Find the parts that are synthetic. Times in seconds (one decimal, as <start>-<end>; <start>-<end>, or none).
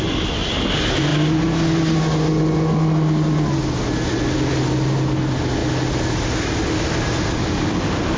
none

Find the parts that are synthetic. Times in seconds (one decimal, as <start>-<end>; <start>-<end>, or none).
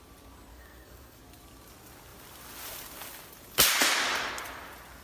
0.5-1.2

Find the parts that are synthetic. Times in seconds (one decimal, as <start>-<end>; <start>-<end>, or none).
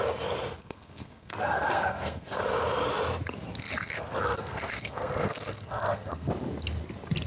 0.6-2.4; 3.8-6.3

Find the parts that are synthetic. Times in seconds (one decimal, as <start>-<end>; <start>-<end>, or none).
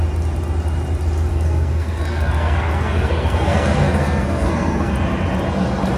1.3-4.9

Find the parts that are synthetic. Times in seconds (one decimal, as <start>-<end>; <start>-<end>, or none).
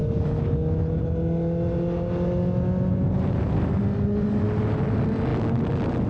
none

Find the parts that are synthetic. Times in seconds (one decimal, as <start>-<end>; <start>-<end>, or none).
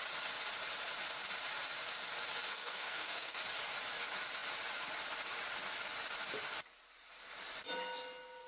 2.5-3.4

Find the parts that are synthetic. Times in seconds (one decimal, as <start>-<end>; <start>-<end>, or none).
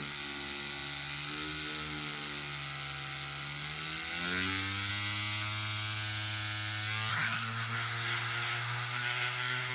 7.1-9.7